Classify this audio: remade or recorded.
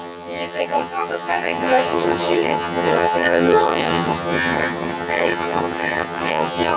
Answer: remade